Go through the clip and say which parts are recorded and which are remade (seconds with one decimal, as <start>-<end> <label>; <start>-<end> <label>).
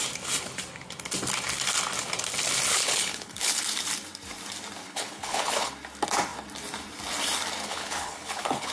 0.0-2.7 recorded; 2.7-3.6 remade; 3.6-4.8 recorded; 4.8-5.7 remade; 5.7-7.6 recorded; 7.6-8.7 remade